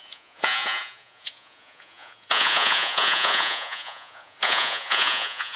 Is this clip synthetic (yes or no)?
yes